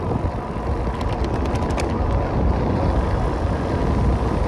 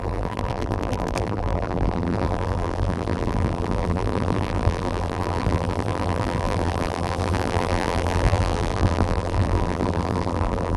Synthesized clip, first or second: second